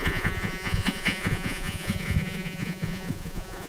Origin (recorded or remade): remade